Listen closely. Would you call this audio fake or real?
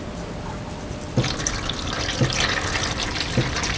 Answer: real